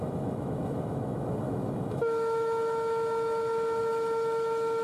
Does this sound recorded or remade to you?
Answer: remade